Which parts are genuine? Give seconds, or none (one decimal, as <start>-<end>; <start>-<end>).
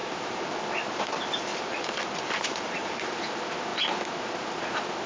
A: 0.5-1.5; 3.1-5.1